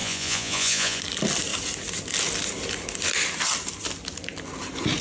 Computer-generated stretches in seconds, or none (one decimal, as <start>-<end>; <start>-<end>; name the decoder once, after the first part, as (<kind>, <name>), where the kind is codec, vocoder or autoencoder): 0.0-1.0 (vocoder, Vocos)